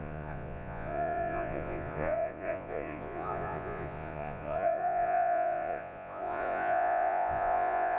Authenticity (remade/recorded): remade